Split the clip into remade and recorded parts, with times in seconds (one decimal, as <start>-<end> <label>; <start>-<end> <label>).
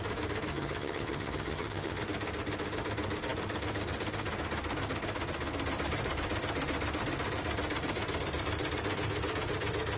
0.0-0.5 recorded; 0.5-2.0 remade; 2.0-10.0 recorded